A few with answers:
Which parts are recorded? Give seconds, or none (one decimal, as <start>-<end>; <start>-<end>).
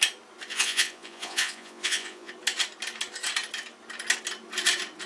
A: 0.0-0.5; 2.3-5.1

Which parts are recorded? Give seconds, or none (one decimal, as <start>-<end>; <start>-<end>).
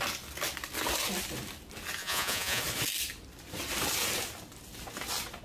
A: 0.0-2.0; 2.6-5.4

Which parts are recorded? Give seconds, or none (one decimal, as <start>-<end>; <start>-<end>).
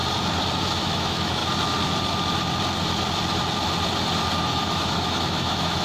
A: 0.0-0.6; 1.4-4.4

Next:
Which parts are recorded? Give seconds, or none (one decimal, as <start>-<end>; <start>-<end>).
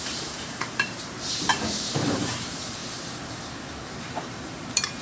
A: 2.8-3.8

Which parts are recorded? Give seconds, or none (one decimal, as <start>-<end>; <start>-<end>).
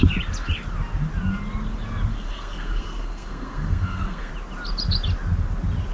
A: 0.0-2.1; 4.3-5.9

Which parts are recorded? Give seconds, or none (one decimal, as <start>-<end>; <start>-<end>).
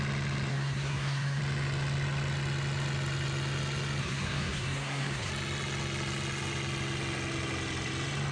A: 0.0-0.5; 1.4-4.0; 5.3-8.3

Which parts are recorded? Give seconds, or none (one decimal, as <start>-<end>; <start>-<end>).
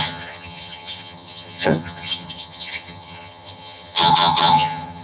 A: none